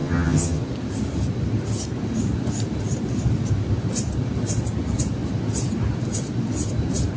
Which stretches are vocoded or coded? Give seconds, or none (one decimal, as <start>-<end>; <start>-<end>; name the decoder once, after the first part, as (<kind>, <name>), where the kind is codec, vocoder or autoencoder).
0.0-0.6 (vocoder, HiFi-GAN)